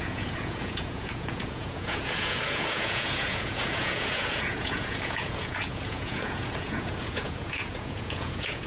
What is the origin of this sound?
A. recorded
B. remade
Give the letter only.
B